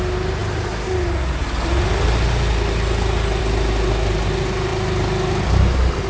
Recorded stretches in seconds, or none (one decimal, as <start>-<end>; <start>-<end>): 0.0-6.1